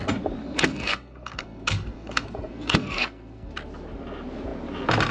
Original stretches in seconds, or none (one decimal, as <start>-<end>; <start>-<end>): 0.0-0.4; 3.5-5.1